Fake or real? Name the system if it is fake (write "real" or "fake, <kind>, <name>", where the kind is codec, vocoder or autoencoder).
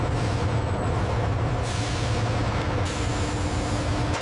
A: real